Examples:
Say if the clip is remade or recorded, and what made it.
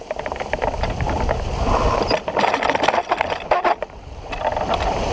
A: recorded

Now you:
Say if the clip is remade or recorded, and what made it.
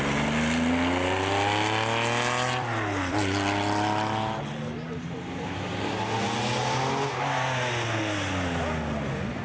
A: recorded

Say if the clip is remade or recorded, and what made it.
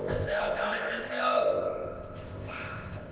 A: remade, codec, ZipCodec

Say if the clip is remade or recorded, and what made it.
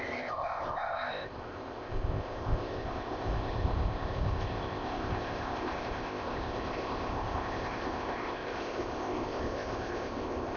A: remade, codec, ZipCodec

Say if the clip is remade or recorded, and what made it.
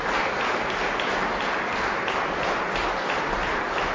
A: recorded